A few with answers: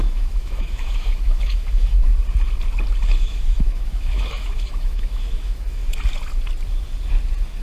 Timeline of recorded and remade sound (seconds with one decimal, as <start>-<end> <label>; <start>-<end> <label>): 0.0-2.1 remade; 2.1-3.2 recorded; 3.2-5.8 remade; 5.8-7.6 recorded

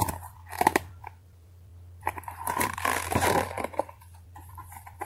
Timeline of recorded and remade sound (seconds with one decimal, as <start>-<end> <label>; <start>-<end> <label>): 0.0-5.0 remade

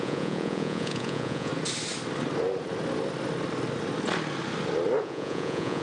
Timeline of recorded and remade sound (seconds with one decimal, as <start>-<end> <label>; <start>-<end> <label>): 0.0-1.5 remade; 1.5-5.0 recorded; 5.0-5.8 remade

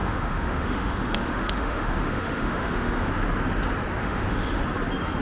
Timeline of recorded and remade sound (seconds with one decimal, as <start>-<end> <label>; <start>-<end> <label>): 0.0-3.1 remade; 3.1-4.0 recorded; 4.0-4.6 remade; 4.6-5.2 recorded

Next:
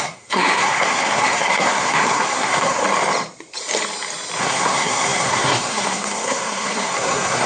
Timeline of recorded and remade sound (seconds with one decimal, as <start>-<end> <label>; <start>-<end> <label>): 0.0-2.8 remade; 2.8-4.4 recorded; 4.4-7.5 remade

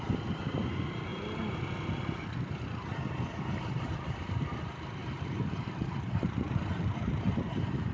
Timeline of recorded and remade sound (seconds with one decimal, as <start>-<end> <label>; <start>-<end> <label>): 0.0-1.1 remade; 1.1-2.0 recorded; 2.0-7.9 remade

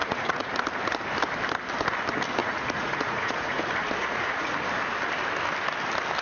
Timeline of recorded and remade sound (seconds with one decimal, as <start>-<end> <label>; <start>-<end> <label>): 0.0-0.5 remade; 0.5-2.4 recorded; 2.4-3.6 remade; 3.6-4.0 recorded; 4.0-4.5 remade; 4.5-6.2 recorded